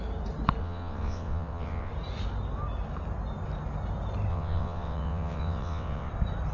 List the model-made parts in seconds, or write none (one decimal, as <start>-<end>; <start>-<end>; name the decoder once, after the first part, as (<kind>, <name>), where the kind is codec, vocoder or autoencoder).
0.6-1.9 (vocoder, WaveNeXt); 4.3-6.1